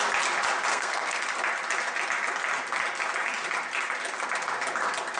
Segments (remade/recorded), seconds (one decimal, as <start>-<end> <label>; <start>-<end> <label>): 0.0-0.7 recorded; 0.7-1.2 remade; 1.2-5.2 recorded